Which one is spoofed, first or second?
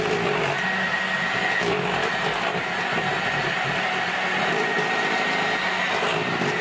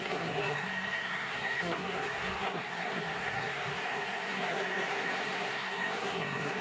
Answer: second